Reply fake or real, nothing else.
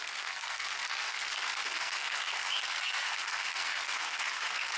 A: fake